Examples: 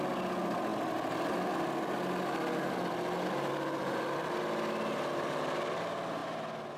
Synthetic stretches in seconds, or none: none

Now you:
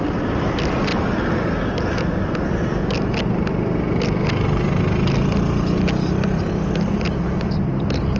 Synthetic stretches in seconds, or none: none